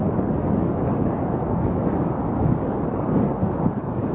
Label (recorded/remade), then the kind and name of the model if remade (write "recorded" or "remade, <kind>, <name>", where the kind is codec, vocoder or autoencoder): remade, codec, DAC